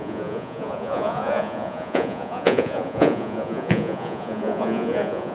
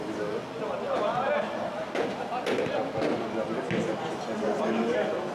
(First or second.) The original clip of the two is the second